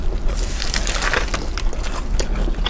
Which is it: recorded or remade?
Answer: recorded